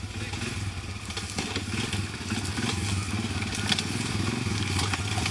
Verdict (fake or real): real